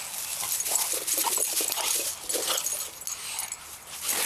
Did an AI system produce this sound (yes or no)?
no